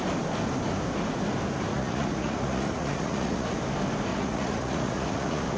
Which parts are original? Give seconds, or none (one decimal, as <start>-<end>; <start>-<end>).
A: 0.0-1.7; 3.5-4.1